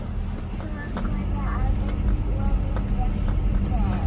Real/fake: real